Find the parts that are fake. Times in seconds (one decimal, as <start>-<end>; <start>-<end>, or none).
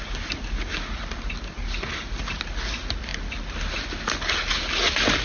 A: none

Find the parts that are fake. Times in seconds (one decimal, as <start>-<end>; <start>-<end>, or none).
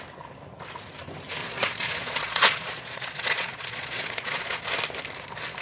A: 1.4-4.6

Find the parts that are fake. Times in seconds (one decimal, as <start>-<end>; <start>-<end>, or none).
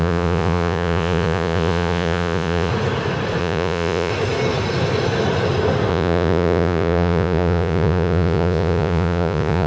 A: 0.0-2.7; 3.4-4.1; 5.9-9.7